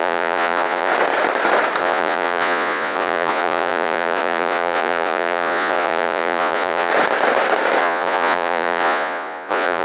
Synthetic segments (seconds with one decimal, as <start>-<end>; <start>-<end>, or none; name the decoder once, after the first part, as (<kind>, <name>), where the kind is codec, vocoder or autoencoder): 0.0-0.9 (vocoder, Vocos); 1.8-6.9; 7.8-9.8